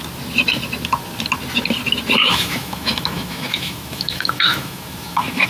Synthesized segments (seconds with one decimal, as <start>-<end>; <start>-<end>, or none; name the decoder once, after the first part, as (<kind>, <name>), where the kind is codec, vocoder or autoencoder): 2.2-5.5 (autoencoder, DAC-VAE)